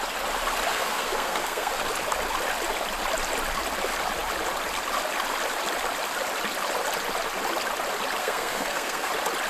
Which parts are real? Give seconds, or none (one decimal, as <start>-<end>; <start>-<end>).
0.0-0.7; 1.7-8.2; 9.1-9.5